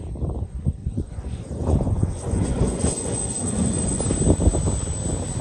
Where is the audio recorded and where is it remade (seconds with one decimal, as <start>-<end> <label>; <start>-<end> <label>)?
0.0-0.8 recorded; 0.8-4.0 remade; 4.0-5.4 recorded